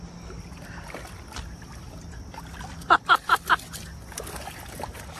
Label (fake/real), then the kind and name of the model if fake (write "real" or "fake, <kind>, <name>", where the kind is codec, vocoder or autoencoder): real